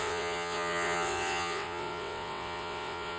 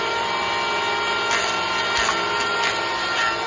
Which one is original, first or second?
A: second